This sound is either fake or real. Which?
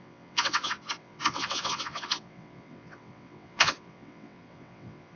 fake